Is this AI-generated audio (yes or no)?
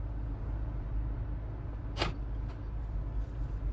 no